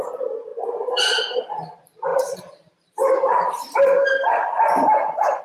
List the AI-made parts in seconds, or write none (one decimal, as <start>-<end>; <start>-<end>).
0.5-1.7; 2.1-5.4